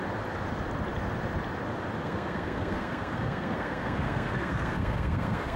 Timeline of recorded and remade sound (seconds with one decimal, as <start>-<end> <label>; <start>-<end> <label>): 0.0-2.0 recorded; 2.0-5.6 remade